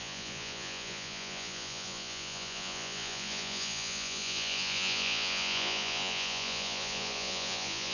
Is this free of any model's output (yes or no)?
no